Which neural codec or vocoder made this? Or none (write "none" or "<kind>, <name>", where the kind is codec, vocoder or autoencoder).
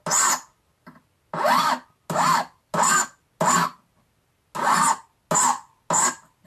none